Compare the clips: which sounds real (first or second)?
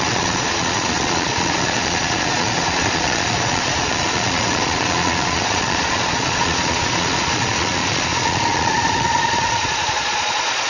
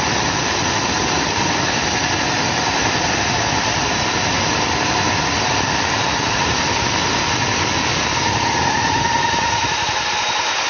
second